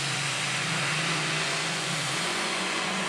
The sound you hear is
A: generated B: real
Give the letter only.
A